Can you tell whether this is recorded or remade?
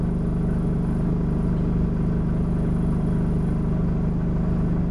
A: recorded